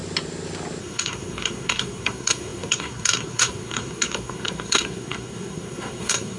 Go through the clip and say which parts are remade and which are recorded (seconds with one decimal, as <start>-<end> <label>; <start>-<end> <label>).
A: 0.0-0.8 recorded; 0.8-6.4 remade